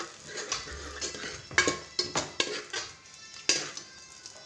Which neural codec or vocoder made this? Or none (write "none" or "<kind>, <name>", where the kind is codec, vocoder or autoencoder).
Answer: none